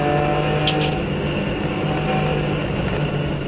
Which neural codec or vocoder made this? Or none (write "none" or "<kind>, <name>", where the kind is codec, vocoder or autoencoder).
none